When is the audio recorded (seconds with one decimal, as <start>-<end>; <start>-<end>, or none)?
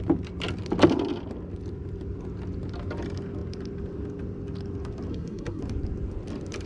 0.0-5.1; 5.6-6.7